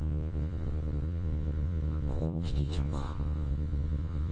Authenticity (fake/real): fake